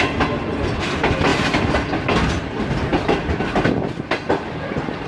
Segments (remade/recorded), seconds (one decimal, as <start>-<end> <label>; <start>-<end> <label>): 0.0-5.1 recorded